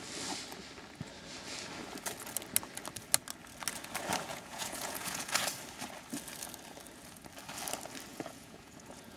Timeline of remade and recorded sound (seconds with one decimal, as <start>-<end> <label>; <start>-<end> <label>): 0.0-4.3 recorded; 4.3-5.4 remade; 5.4-8.1 recorded; 8.1-9.2 remade